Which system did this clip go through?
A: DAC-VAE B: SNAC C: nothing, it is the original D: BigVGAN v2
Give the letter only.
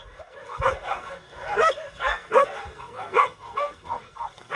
B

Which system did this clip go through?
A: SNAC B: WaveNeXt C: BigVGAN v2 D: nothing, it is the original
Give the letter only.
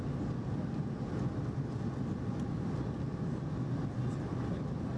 D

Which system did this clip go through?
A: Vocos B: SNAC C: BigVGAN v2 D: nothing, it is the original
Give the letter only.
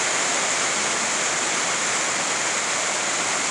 C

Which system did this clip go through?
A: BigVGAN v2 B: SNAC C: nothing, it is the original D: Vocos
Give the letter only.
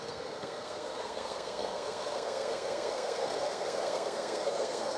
B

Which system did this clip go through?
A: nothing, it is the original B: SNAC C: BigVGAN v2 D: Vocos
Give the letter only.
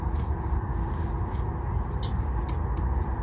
A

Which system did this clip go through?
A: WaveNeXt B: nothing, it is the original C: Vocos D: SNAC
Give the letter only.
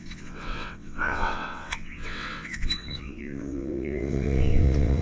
A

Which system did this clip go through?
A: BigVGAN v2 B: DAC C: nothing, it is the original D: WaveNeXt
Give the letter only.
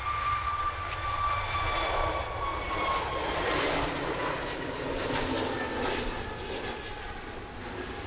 C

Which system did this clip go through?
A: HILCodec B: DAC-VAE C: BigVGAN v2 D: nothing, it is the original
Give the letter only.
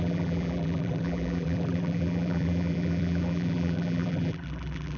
C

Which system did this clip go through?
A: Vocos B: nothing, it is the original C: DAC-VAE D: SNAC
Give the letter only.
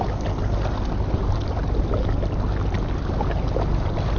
B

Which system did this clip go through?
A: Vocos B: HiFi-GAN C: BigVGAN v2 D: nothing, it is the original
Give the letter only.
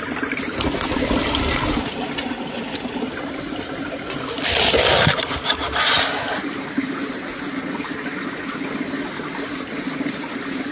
D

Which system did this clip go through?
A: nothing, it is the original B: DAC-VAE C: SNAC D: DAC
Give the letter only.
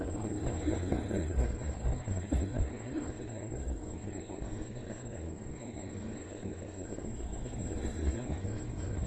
C